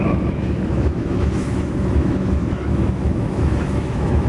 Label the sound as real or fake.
fake